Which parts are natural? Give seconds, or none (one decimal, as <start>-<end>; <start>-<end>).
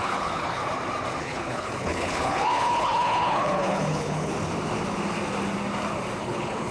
0.6-1.2; 4.3-6.2